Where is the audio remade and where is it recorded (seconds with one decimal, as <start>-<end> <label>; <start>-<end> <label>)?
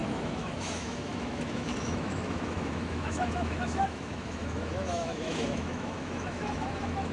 0.0-7.1 remade